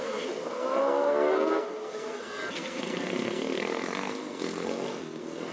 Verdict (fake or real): fake